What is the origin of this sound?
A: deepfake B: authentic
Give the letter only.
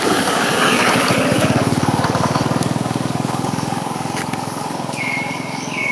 A